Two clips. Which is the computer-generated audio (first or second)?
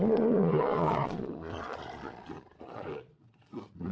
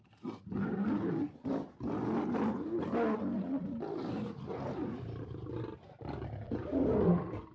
first